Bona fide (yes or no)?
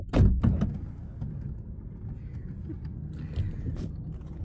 yes